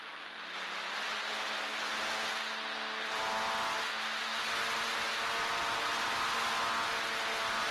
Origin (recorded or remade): recorded